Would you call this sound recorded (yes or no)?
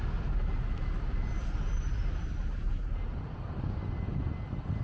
yes